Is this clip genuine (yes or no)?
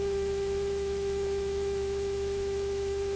no